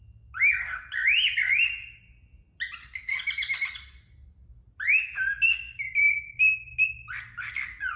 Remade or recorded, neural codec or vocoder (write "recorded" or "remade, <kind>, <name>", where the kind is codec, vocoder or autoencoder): recorded